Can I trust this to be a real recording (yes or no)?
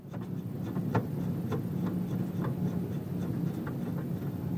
yes